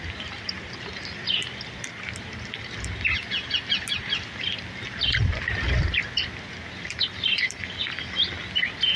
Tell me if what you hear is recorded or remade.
recorded